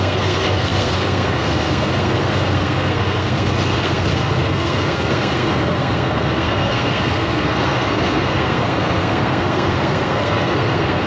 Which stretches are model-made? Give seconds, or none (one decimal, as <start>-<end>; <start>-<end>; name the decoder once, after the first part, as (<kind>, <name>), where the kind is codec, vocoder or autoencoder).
0.0-11.1 (codec, SNAC)